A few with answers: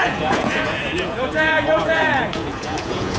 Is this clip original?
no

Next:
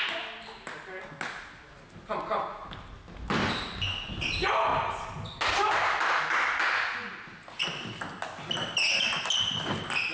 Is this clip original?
yes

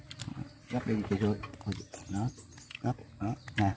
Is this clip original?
yes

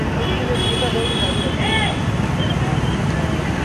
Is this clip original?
yes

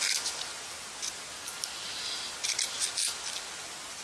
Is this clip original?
yes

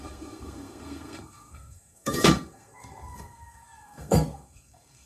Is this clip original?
no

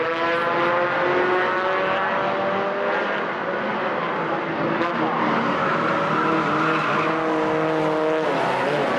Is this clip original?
yes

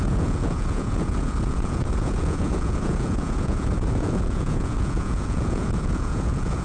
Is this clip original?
no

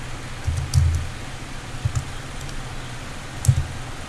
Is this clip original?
yes